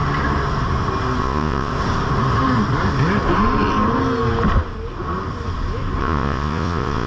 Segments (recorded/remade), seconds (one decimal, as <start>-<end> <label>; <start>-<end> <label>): 0.0-1.2 recorded; 1.2-1.7 remade; 1.7-6.0 recorded; 6.0-7.1 remade